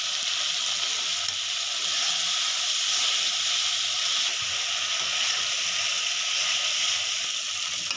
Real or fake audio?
real